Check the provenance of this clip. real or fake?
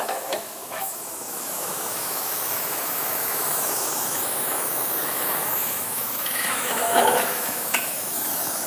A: fake